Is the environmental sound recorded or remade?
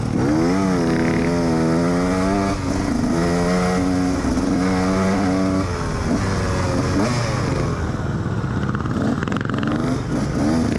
recorded